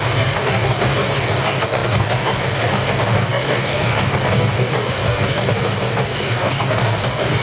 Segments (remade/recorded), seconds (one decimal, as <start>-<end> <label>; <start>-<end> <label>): 0.0-7.4 remade